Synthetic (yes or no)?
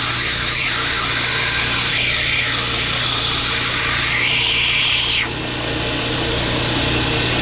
no